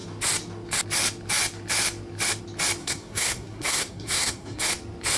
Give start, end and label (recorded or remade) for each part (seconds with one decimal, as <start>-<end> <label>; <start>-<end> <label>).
0.0-2.8 recorded; 2.8-4.7 remade; 4.7-5.2 recorded